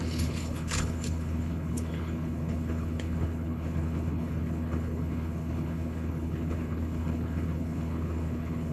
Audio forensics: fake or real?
fake